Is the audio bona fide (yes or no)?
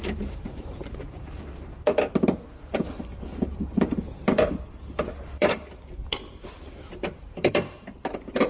no